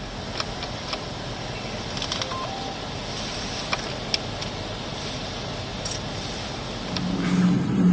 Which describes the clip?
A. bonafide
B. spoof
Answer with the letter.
A